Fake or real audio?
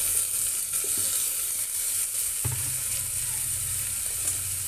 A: real